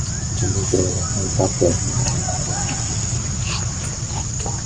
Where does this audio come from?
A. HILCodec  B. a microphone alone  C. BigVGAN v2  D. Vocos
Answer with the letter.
B